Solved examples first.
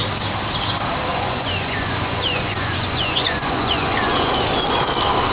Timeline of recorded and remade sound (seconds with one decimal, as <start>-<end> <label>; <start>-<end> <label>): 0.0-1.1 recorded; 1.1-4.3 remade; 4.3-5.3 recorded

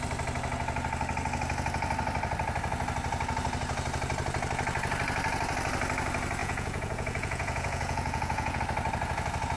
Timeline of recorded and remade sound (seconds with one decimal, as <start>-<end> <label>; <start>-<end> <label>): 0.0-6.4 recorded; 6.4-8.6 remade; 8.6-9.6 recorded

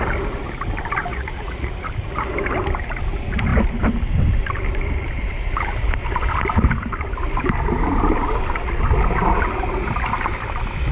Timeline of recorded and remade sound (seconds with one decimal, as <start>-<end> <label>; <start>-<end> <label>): 0.0-1.1 recorded; 1.1-1.9 remade; 1.9-10.9 recorded

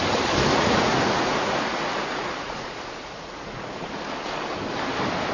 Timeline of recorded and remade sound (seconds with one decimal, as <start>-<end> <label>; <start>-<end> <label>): 0.0-0.5 recorded; 0.5-3.7 remade; 3.7-5.3 recorded

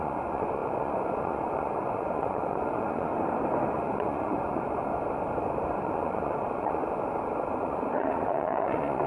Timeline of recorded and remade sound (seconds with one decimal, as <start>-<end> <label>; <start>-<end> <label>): 0.0-3.1 remade; 3.1-3.7 recorded; 3.7-4.9 remade; 4.9-5.6 recorded; 5.6-6.8 remade; 6.8-7.5 recorded; 7.5-9.1 remade